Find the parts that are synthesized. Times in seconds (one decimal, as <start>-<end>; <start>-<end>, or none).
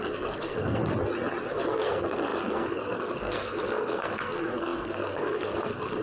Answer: 0.0-0.8; 1.4-6.0